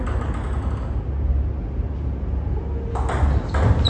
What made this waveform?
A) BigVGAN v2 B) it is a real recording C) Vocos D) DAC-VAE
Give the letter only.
B